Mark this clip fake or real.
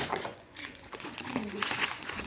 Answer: fake